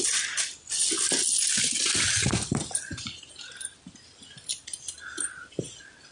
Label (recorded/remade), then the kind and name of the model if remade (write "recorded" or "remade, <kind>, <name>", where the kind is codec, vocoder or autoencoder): recorded